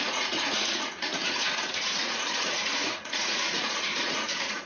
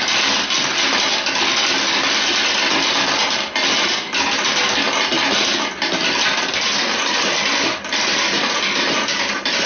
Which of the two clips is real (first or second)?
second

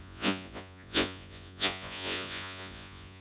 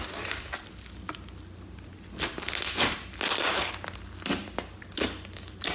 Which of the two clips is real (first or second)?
second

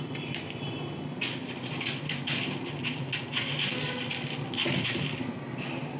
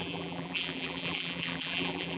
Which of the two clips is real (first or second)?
first